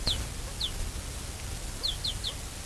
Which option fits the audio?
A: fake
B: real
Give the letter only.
B